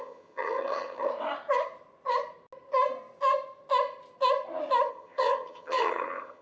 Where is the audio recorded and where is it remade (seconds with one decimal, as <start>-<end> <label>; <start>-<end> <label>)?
0.0-1.1 remade; 1.1-4.9 recorded; 4.9-6.4 remade